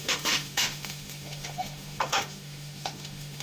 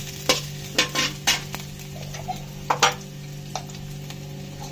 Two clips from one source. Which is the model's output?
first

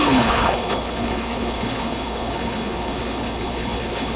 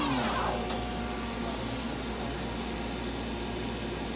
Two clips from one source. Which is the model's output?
first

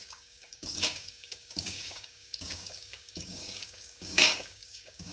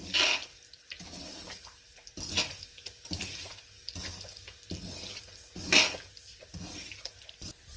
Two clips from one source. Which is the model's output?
first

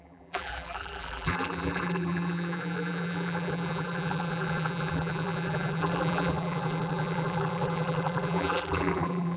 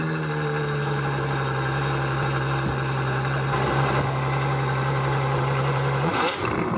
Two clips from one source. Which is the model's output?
first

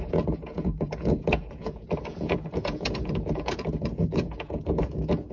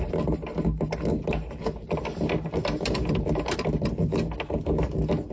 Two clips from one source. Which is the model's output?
first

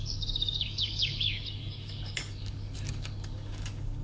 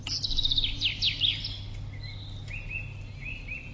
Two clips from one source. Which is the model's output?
first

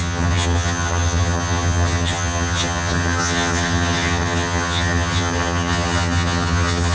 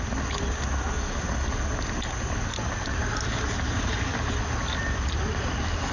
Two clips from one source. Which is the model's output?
first